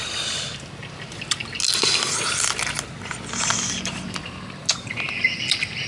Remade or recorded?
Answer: recorded